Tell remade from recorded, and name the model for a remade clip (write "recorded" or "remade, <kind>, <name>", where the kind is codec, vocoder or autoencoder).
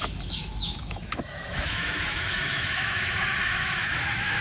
remade, autoencoder, DAC-VAE